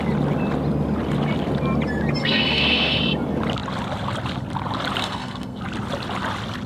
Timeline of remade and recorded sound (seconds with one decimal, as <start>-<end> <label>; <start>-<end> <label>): 0.0-2.2 recorded; 2.2-3.0 remade; 3.0-5.0 recorded; 5.0-5.6 remade; 5.6-6.7 recorded

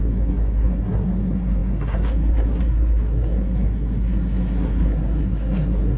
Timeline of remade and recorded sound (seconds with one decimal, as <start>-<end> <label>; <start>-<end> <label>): 0.0-6.0 remade

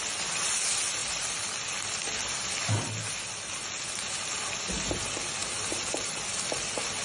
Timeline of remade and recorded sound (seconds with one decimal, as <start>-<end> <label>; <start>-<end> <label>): 0.0-1.0 recorded; 1.0-2.5 remade; 2.5-5.4 recorded; 5.4-7.0 remade

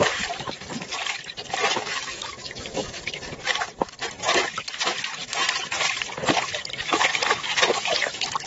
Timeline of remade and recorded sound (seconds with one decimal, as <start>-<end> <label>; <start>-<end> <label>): 0.0-1.7 recorded; 1.7-2.9 remade; 2.9-8.5 recorded

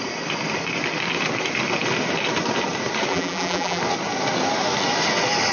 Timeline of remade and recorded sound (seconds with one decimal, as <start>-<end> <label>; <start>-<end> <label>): 0.0-3.1 recorded; 3.1-3.8 remade; 3.8-5.5 recorded